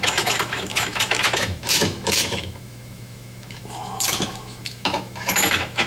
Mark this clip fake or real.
fake